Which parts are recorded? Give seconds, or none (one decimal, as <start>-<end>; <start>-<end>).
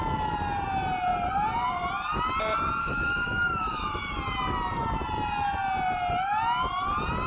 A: 0.0-2.8; 4.2-7.3